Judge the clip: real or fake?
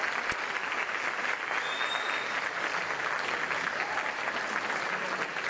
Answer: real